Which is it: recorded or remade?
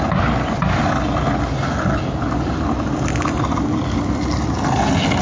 recorded